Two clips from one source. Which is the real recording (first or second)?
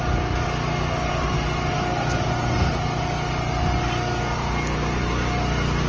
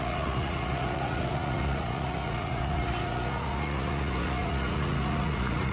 first